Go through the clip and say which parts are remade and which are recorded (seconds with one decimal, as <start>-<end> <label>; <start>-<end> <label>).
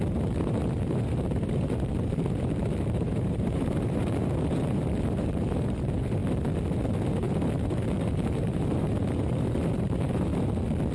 0.0-6.2 remade; 6.2-7.1 recorded; 7.1-10.3 remade; 10.3-10.9 recorded